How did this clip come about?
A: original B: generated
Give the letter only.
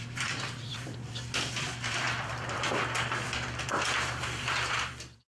B